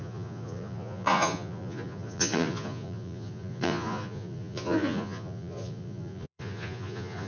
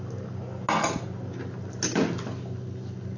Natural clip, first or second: second